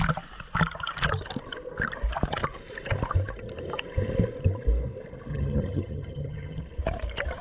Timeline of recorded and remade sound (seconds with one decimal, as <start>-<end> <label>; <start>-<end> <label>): 0.0-5.3 recorded; 5.3-6.6 remade; 6.6-7.4 recorded